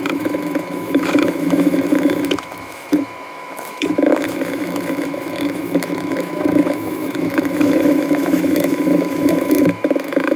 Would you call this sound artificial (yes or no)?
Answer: yes